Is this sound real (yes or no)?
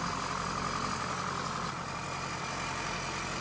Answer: yes